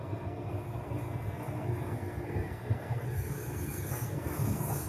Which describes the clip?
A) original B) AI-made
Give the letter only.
B